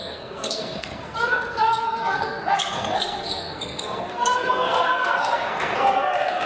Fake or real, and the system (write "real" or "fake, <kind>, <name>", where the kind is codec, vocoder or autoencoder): fake, codec, SNAC